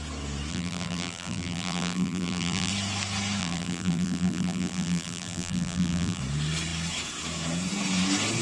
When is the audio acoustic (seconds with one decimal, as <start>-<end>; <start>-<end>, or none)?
0.0-0.5; 2.7-3.4; 6.2-8.4